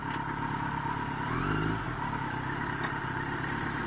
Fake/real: real